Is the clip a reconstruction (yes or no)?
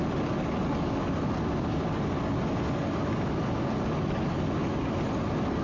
no